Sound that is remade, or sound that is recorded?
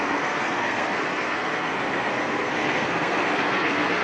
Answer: remade